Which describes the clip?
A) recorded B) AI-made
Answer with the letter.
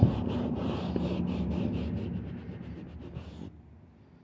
A